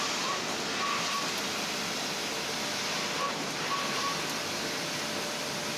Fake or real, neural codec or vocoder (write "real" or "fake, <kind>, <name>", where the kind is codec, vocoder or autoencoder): real